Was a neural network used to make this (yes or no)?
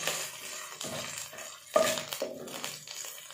no